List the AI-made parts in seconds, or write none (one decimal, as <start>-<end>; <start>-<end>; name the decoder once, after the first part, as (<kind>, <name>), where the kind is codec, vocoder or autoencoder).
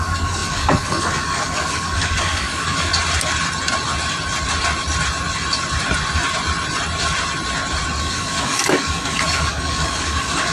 0.0-2.9 (codec, DAC); 8.0-10.5